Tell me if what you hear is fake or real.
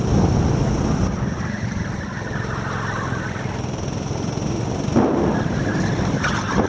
real